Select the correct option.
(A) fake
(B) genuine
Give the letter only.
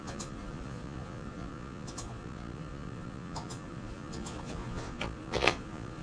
A